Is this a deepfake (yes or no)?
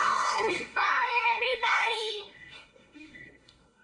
yes